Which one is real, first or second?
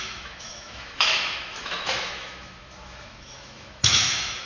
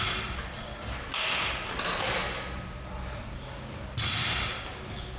second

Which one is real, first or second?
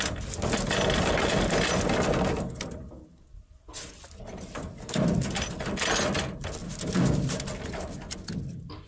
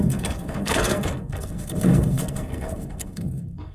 first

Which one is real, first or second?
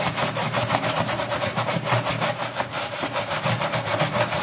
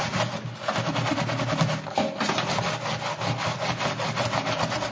second